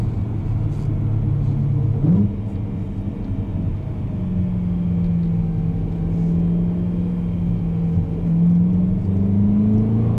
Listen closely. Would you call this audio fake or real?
real